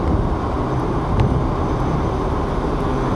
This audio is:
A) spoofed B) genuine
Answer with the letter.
B